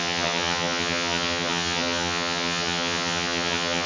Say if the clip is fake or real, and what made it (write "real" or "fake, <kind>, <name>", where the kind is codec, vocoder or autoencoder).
fake, vocoder, HiFi-GAN